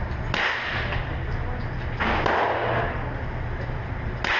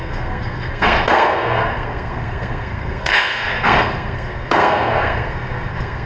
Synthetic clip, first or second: second